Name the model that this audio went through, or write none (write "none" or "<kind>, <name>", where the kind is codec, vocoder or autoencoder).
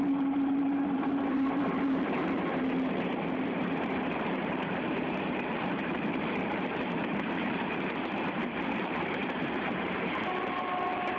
vocoder, BigVGAN v2